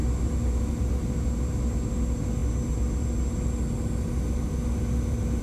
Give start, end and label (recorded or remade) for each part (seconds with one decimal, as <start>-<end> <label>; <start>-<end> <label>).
0.0-5.4 recorded